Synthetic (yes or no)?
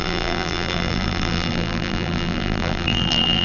yes